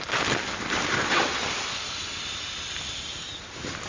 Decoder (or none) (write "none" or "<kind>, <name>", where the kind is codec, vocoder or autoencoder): none